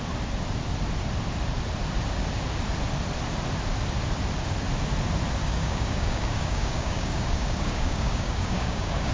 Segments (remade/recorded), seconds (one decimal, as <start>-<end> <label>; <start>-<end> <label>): 0.0-5.4 recorded; 5.4-9.1 remade